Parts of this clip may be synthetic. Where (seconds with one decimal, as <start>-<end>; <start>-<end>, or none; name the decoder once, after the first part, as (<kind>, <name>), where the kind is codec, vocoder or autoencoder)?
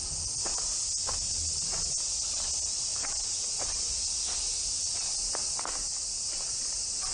none